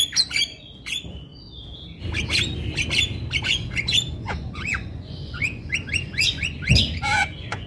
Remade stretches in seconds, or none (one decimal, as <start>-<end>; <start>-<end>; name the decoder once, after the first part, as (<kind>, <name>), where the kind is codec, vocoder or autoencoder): 0.0-1.3 (vocoder, Vocos); 3.4-7.7